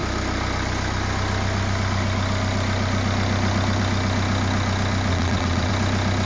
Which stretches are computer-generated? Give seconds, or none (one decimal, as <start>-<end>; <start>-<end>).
5.1-5.7